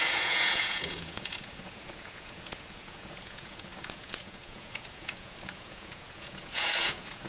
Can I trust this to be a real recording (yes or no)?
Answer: no